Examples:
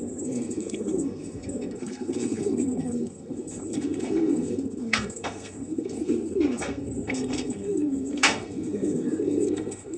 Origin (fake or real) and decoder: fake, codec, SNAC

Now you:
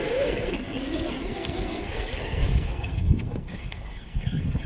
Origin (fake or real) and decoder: fake, codec, SNAC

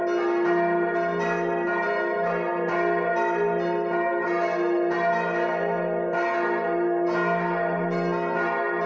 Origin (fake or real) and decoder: real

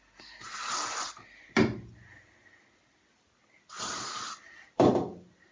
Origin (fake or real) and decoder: real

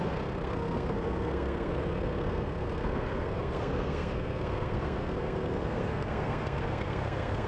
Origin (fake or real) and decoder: fake, codec, SNAC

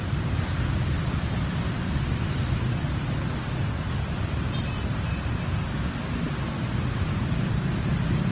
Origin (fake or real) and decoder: real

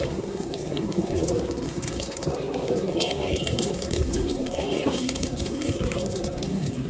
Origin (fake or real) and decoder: fake, codec, SNAC